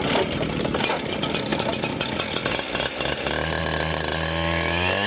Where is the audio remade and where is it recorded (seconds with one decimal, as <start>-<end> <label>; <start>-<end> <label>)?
0.0-5.1 recorded